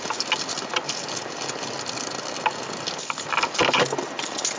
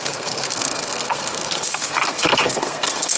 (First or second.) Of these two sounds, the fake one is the second